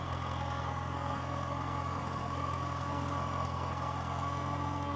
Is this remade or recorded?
remade